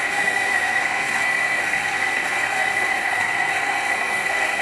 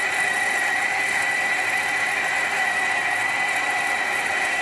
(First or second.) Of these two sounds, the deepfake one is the first